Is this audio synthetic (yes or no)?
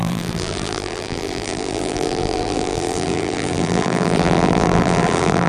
yes